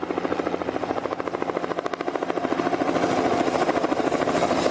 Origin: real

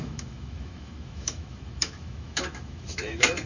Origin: fake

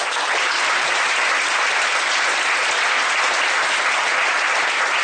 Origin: real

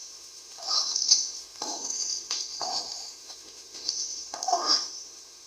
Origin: fake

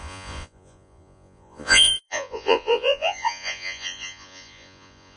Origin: fake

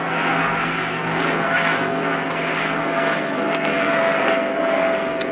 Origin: fake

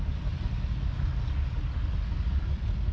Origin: real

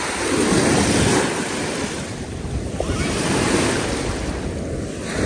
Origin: real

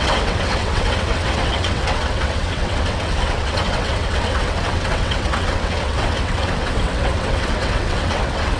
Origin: fake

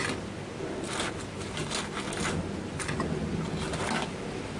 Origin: real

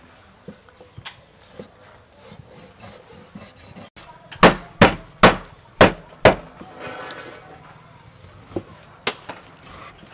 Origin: real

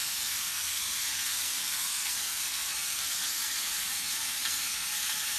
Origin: fake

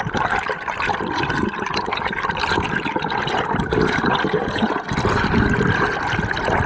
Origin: real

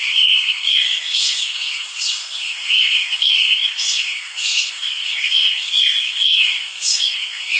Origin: fake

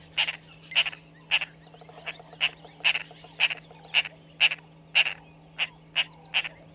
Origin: real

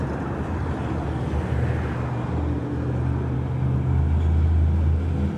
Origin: real